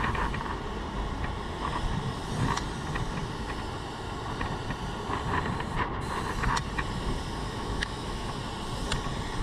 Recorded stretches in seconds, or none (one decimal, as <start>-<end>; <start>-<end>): 0.0-7.4; 8.4-9.4